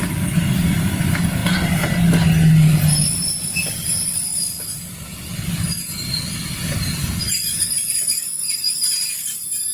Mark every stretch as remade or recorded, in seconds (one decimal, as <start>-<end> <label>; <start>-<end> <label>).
0.0-9.7 recorded